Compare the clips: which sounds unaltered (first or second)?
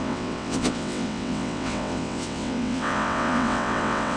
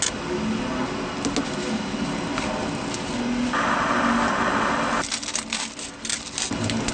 second